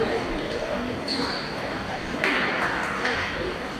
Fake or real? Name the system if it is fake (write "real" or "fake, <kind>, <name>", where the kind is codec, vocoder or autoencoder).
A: fake, codec, DAC